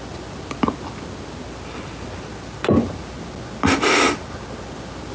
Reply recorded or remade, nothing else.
recorded